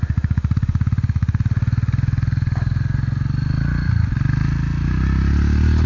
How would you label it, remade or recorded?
recorded